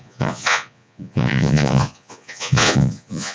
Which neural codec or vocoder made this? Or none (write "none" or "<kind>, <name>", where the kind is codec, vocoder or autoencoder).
vocoder, Vocos